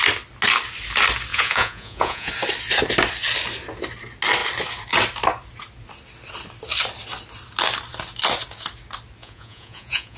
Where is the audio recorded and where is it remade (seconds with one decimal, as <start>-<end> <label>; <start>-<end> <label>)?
0.0-1.3 recorded; 1.3-2.3 remade; 2.3-9.2 recorded; 9.2-10.2 remade